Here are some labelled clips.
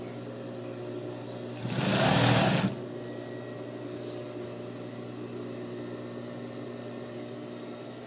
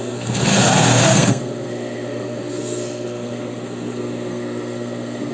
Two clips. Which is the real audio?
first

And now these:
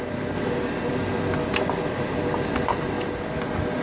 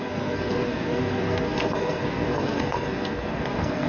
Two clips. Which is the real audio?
first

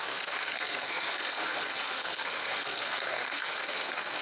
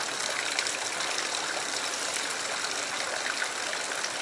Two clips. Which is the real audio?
second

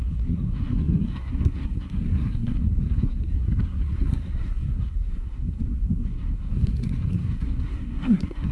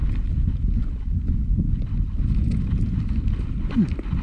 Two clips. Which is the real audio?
second